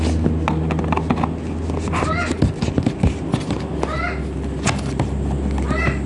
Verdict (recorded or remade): recorded